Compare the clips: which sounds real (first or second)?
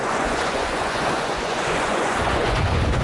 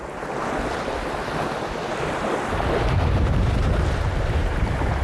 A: second